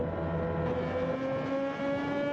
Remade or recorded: recorded